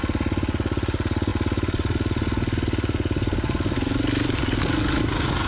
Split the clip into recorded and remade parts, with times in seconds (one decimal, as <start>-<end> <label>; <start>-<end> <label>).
0.0-5.5 recorded